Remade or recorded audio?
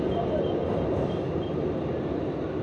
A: recorded